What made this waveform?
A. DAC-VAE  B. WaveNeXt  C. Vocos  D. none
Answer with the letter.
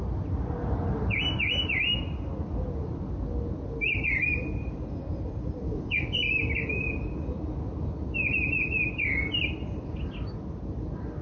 D